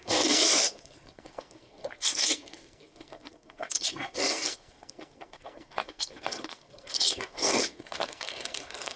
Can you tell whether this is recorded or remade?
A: remade